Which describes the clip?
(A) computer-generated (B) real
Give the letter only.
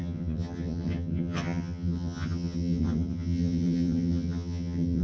A